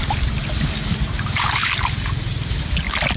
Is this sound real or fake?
real